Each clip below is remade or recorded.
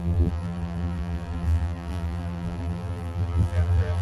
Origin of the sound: remade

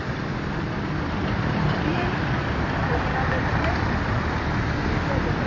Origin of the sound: remade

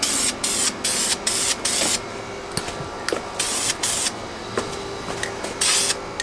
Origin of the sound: recorded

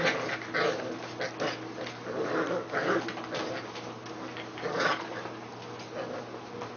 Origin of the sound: recorded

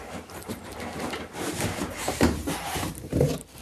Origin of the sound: remade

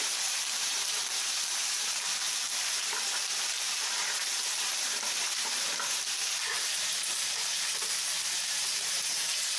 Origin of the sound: remade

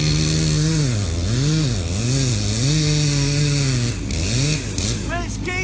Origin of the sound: recorded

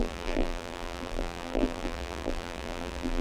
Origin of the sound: remade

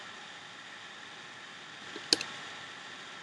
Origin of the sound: recorded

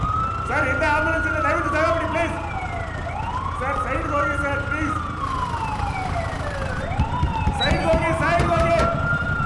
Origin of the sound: recorded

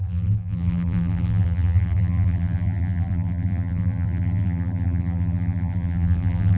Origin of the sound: remade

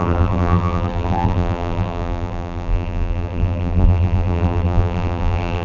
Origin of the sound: remade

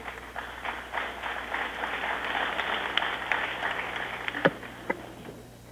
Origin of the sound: recorded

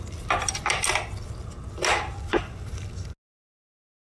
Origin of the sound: recorded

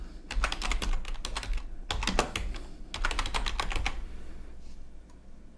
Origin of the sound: recorded